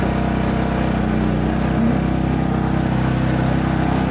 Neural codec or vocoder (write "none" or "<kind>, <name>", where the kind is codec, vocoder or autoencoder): none